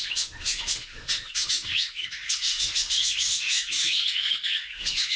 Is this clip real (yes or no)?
no